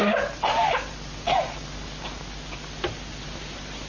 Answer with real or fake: real